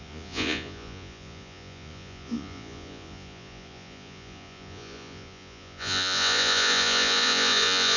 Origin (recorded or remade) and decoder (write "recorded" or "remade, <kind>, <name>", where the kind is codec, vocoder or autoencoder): remade, vocoder, Vocos